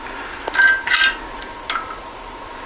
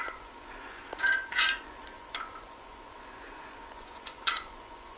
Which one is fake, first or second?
second